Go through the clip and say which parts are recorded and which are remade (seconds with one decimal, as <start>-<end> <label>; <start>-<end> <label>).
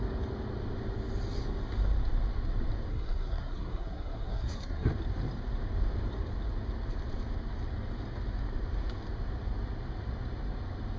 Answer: 0.0-2.9 recorded; 2.9-4.9 remade; 4.9-11.0 recorded